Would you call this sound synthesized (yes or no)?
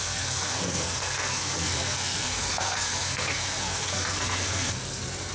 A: yes